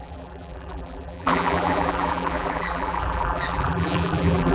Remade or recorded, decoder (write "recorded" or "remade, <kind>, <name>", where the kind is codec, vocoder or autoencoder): remade, vocoder, BigVGAN v2